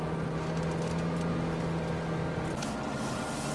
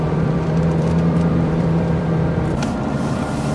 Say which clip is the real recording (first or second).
first